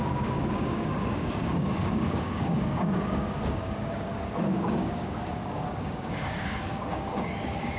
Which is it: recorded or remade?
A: remade